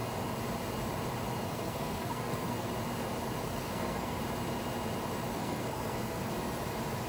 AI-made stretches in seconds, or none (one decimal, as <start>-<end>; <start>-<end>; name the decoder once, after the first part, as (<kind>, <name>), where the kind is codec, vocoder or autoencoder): 1.4-2.7 (codec, SNAC); 3.4-4.2; 5.3-6.3